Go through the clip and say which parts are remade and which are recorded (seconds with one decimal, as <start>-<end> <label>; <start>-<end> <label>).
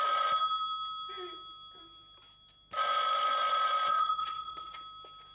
0.0-3.9 recorded; 3.9-4.8 remade; 4.8-5.3 recorded